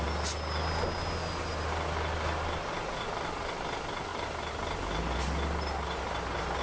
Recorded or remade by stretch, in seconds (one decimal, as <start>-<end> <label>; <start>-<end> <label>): 0.0-6.6 recorded